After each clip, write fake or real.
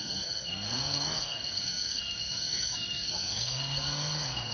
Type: fake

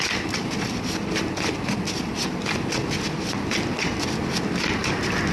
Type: real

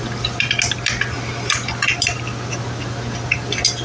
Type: real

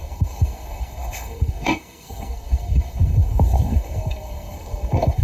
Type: fake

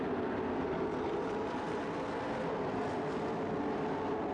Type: real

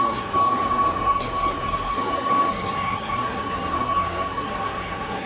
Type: fake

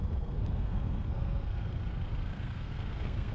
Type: fake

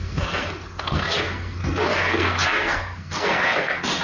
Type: fake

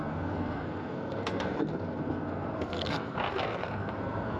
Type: fake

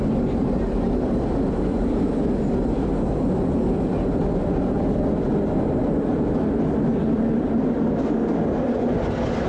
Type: real